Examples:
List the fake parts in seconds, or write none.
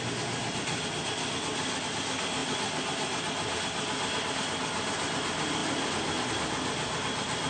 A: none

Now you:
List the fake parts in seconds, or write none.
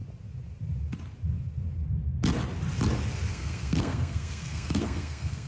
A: 3.3-5.5 (codec, SNAC)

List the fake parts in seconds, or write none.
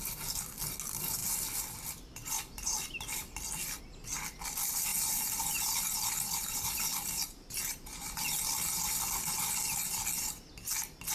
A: 1.2-3.8 (vocoder, BigVGAN v2); 4.9-8.0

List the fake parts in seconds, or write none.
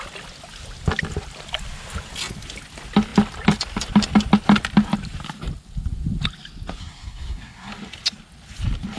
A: 6.8-7.7 (codec, SNAC)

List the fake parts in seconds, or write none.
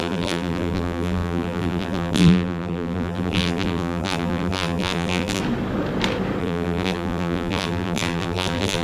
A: 0.0-5.4 (vocoder, BigVGAN v2); 6.4-8.8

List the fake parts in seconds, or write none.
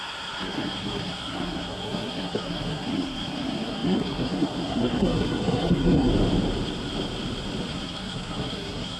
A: 0.0-6.1 (codec, SNAC); 7.7-9.0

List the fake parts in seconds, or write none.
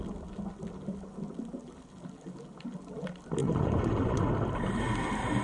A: 3.4-4.3 (vocoder, Vocos)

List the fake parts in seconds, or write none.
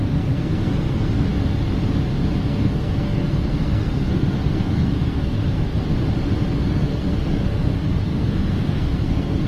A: 0.0-1.3 (codec, SNAC); 2.4-5.9; 6.5-9.5